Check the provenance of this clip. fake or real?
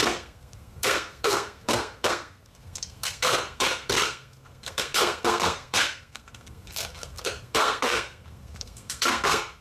fake